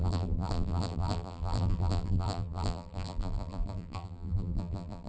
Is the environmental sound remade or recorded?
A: remade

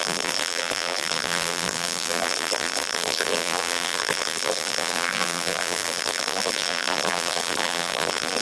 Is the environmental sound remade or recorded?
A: remade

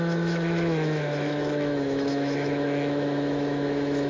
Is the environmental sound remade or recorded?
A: remade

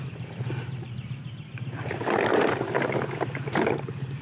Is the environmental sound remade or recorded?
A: recorded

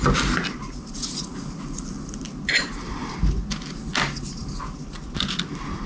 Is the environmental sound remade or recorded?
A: recorded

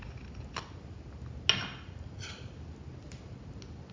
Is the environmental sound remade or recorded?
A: recorded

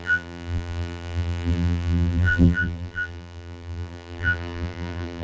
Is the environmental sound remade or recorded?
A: remade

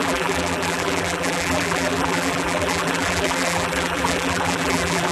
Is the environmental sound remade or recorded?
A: remade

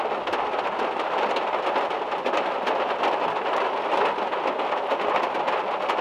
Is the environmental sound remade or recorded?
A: recorded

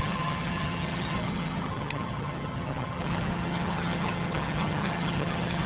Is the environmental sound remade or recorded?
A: remade